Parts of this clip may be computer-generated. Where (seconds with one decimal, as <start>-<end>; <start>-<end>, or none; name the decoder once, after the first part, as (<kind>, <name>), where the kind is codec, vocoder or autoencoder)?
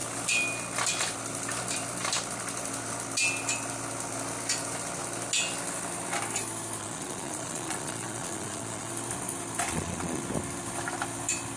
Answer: 6.8-8.9 (vocoder, Vocos); 9.7-10.2